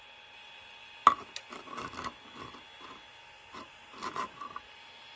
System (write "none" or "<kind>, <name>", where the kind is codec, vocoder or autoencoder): none